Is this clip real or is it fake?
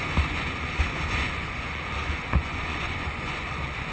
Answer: fake